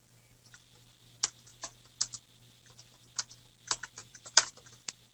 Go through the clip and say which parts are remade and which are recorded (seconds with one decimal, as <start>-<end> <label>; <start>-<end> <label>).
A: 0.0-4.0 recorded; 4.0-5.1 remade